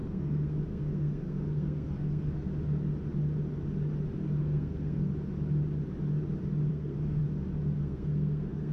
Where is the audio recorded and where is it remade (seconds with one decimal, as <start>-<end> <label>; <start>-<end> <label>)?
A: 0.0-2.5 remade; 2.5-4.4 recorded; 4.4-5.1 remade; 5.1-6.7 recorded; 6.7-7.2 remade; 7.2-7.8 recorded; 7.8-8.7 remade